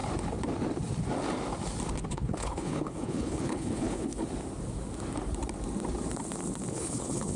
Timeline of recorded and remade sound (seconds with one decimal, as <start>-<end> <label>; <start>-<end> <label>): 0.0-2.1 recorded; 2.1-4.2 remade; 4.2-6.7 recorded; 6.7-7.4 remade